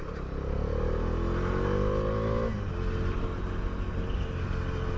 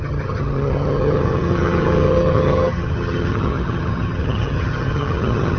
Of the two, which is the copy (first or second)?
second